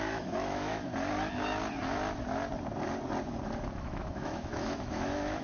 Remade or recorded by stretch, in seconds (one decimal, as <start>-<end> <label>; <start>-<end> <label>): 0.0-0.9 remade; 0.9-3.8 recorded; 3.8-5.4 remade